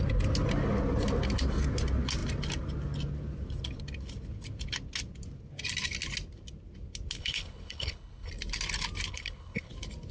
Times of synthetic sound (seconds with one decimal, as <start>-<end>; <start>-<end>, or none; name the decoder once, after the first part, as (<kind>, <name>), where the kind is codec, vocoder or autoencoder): 7.2-8.3 (codec, HILCodec); 9.1-9.7